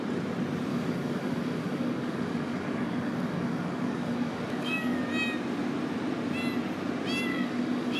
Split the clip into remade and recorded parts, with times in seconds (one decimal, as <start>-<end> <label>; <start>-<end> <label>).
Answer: 0.0-0.7 recorded; 0.7-5.0 remade; 5.0-7.3 recorded; 7.3-8.0 remade